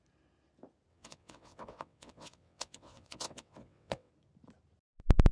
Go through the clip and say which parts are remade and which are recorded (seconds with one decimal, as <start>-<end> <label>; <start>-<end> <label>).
0.0-0.9 recorded; 0.9-4.1 remade; 4.1-5.3 recorded